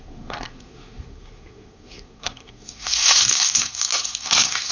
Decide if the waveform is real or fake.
fake